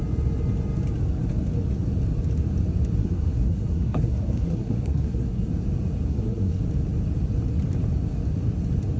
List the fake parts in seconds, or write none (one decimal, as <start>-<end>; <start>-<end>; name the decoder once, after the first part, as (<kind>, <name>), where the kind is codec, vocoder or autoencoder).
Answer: 3.0-5.5 (codec, SNAC); 6.1-6.6